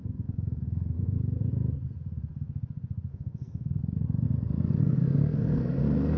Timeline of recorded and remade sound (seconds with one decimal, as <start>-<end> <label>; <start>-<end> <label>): 0.0-1.2 remade; 1.2-3.1 recorded; 3.1-3.8 remade; 3.8-4.8 recorded; 4.8-5.8 remade; 5.8-6.2 recorded